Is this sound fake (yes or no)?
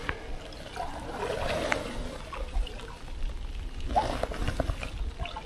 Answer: no